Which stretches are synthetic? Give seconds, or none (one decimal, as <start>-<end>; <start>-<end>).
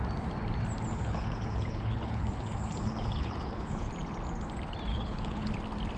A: 0.9-3.9; 4.9-5.5